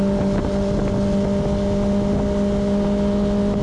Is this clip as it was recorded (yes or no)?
yes